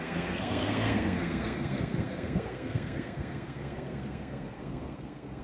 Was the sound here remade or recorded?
remade